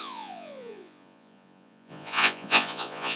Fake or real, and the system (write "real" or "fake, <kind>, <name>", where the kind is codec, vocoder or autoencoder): fake, vocoder, Vocos